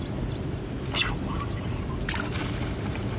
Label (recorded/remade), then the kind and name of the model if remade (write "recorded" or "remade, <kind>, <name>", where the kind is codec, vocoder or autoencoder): recorded